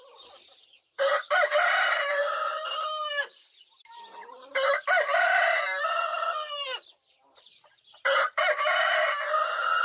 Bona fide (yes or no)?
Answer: no